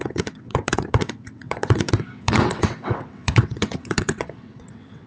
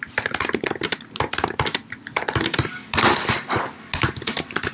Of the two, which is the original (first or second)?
second